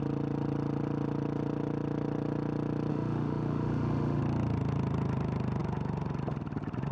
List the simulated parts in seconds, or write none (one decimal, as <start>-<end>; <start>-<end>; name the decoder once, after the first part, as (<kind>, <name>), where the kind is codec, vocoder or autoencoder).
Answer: 2.9-4.2 (autoencoder, DAC-VAE)